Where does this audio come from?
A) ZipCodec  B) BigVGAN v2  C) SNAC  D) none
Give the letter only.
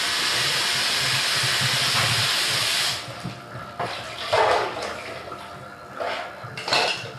D